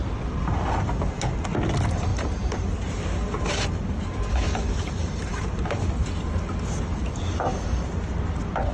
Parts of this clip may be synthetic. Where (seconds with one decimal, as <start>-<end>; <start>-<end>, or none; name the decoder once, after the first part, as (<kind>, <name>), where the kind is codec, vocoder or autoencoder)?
2.1-2.7 (vocoder, BigVGAN v2)